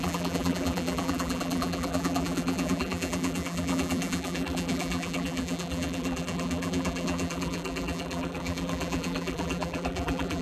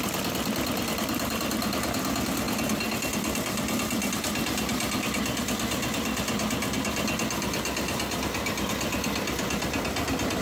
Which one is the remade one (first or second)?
first